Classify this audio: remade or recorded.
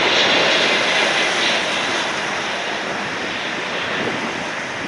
recorded